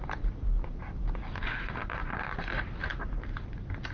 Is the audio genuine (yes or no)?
yes